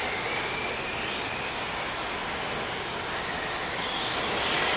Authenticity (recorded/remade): recorded